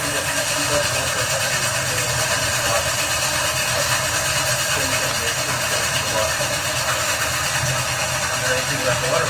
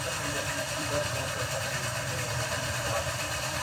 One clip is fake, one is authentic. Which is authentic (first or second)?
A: first